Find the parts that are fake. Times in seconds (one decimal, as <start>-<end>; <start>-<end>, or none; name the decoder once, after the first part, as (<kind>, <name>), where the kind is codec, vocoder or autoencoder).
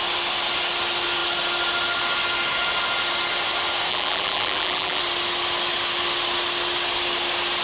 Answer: 3.9-5.0 (vocoder, BigVGAN v2)